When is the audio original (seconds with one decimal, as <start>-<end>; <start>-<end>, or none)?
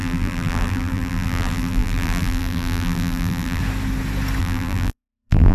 3.6-4.4